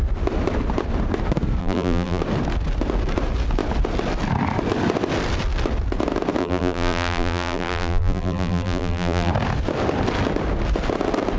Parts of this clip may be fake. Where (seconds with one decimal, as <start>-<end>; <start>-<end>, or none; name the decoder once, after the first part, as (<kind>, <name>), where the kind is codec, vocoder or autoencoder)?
1.6-2.2 (vocoder, BigVGAN v2); 6.4-9.3